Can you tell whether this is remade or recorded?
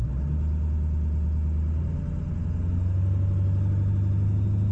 recorded